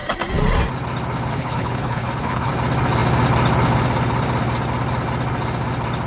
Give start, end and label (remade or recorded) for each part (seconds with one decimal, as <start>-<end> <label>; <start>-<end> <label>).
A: 0.0-1.3 recorded; 1.3-2.5 remade; 2.5-6.1 recorded